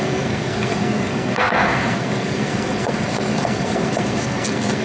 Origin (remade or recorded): remade